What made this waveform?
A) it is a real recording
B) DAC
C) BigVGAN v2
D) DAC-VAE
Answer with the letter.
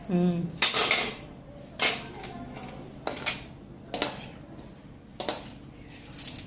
A